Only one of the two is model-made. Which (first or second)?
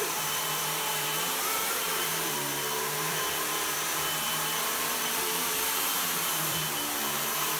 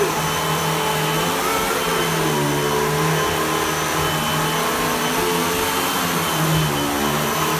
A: first